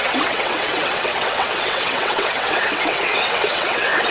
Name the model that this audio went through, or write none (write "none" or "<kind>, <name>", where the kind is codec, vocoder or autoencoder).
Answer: vocoder, WaveNeXt